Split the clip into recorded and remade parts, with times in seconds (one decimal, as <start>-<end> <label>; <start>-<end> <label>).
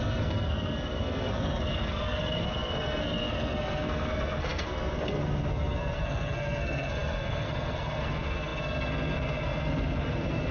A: 0.0-10.5 remade